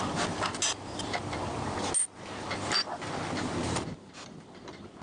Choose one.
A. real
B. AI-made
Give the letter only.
A